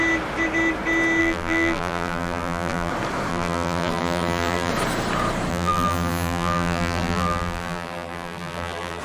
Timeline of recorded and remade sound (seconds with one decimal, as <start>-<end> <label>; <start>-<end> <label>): 0.0-1.2 recorded; 1.2-2.9 remade; 2.9-3.3 recorded; 3.3-4.7 remade; 4.7-5.5 recorded; 5.5-9.0 remade